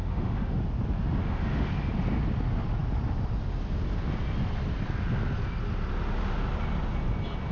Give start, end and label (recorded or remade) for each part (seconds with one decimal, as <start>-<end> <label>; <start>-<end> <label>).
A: 0.0-0.6 remade; 0.6-1.2 recorded; 1.2-1.7 remade; 1.7-7.5 recorded